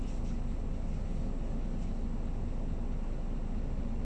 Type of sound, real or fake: real